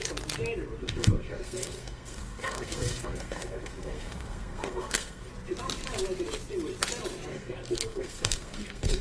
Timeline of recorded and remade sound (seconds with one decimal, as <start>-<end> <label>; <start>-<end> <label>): 0.0-0.8 recorded; 0.8-5.3 remade; 5.3-7.3 recorded; 7.3-9.0 remade